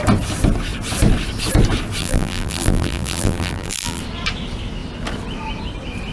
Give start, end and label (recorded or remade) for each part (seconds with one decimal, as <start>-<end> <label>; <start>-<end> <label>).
0.0-2.0 recorded; 2.0-4.0 remade; 4.0-6.1 recorded